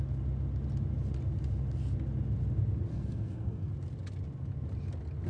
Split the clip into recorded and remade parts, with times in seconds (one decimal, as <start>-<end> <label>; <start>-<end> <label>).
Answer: 0.0-2.9 recorded; 2.9-3.7 remade; 3.7-5.3 recorded